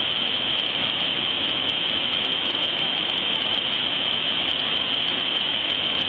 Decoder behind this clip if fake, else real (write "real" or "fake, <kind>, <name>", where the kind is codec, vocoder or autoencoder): fake, autoencoder, DAC-VAE